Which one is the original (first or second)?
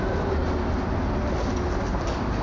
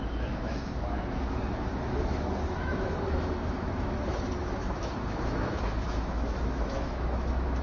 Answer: first